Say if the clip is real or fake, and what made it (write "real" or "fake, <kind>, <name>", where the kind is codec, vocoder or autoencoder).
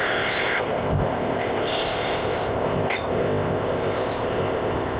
fake, codec, ZipCodec